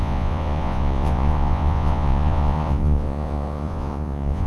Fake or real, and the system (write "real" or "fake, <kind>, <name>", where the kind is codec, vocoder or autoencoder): fake, vocoder, Vocos